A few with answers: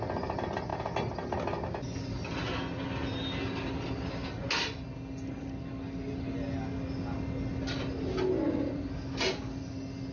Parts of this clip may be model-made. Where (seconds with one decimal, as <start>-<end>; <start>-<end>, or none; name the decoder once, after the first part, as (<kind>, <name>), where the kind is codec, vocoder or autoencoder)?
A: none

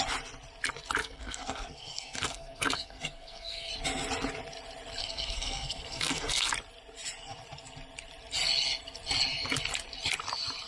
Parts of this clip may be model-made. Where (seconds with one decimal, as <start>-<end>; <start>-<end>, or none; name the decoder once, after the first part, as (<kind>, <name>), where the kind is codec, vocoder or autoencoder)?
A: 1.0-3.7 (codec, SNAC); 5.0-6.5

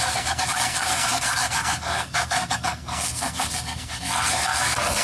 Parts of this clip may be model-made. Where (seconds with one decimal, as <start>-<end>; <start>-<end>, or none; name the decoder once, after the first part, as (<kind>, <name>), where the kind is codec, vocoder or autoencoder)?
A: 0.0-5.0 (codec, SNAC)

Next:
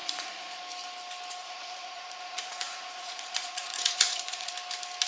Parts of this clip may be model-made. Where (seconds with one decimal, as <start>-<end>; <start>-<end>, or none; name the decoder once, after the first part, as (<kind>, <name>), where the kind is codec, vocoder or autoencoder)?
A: 0.0-0.6 (vocoder, Vocos); 1.4-4.5

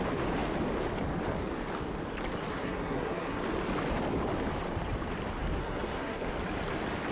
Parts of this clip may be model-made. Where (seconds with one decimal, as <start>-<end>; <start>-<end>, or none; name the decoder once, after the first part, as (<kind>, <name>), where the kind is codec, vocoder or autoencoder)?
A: 2.5-3.4 (codec, SNAC); 5.6-6.3

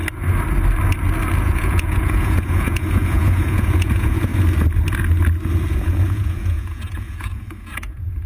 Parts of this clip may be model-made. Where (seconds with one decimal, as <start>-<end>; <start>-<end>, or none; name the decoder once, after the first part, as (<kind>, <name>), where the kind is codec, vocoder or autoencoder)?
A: 1.4-4.3 (vocoder, Vocos); 5.7-8.3

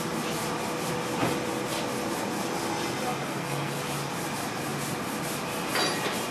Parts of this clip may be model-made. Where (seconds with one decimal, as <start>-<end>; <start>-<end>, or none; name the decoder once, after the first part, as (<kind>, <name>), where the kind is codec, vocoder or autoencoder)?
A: 3.3-3.8 (codec, SNAC)

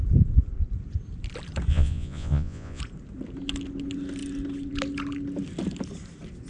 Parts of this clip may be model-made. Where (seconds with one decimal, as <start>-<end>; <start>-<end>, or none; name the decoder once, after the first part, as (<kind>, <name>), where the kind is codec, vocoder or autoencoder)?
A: 1.7-2.8 (vocoder, Vocos)